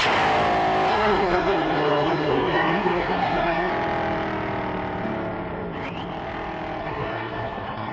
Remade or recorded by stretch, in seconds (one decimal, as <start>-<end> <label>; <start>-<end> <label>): 0.0-0.9 recorded; 0.9-3.7 remade; 3.7-6.8 recorded; 6.8-7.9 remade